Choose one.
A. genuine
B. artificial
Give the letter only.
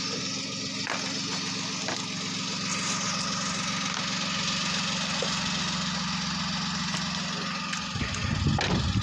A